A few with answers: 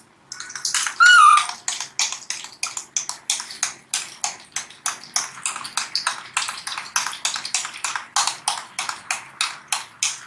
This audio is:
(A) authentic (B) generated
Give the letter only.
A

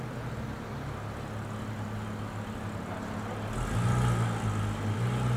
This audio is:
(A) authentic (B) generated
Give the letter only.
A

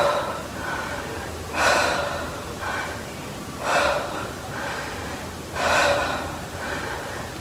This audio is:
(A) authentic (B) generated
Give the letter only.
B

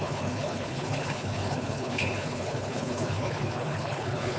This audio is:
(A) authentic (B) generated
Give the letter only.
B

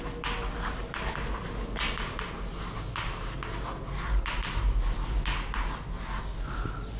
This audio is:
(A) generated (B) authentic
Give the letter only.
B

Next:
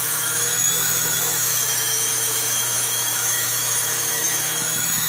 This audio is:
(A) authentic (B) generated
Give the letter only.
B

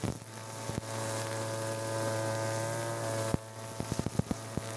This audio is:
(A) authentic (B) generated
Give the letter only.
A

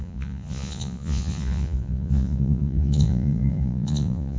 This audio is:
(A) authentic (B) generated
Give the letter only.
B